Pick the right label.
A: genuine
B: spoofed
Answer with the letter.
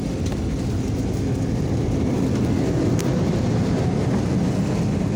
A